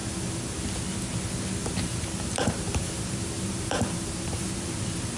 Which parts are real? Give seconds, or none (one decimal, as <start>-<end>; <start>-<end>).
0.6-1.6; 4.7-5.2